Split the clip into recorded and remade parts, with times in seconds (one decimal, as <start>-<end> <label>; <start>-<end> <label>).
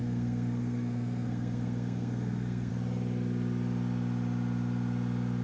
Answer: 0.0-2.7 remade; 2.7-5.4 recorded